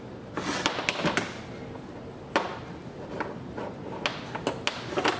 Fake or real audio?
real